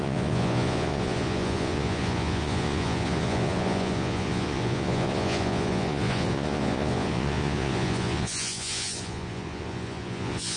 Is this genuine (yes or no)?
no